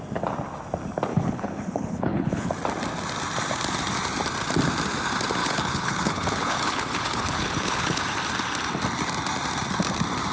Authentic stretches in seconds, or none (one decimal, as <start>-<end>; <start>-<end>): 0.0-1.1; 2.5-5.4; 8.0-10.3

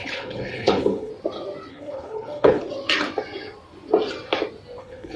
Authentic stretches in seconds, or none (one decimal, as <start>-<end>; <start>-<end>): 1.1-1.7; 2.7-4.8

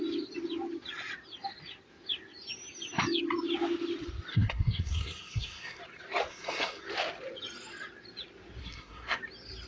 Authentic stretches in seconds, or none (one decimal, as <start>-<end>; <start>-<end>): 0.0-4.3; 5.8-6.3; 6.8-8.6; 9.2-9.7